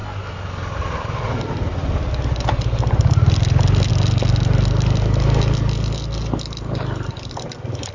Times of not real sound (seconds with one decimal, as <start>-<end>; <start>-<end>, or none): none